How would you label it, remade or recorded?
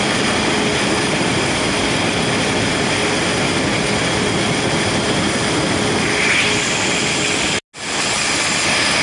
recorded